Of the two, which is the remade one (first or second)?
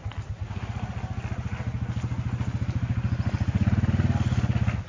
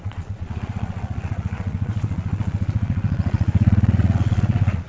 second